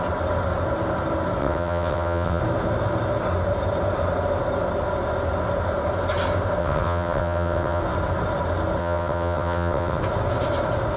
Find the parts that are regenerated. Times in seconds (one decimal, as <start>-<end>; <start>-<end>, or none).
1.4-2.4; 6.6-7.8; 8.8-10.0